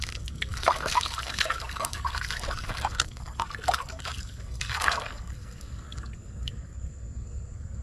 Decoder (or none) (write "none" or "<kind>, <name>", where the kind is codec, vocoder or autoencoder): codec, SNAC